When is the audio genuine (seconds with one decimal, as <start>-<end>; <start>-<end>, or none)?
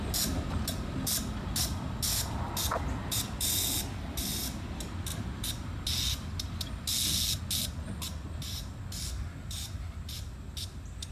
0.0-11.1